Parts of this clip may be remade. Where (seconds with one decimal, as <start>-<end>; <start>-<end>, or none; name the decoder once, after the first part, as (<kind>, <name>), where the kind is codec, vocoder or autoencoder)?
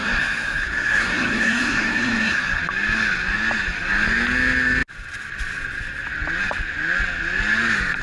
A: 0.0-2.6 (codec, SNAC)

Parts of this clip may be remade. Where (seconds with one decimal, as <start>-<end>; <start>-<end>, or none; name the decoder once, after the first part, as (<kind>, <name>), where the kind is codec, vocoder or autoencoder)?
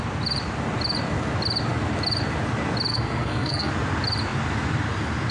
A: 2.9-3.7 (codec, SNAC)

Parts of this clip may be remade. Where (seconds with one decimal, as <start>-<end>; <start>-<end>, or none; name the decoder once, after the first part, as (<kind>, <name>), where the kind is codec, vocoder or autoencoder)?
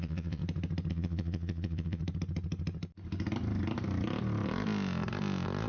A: 0.0-0.4 (vocoder, Vocos); 0.9-2.0